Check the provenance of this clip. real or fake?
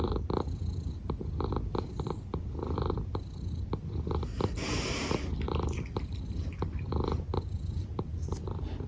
real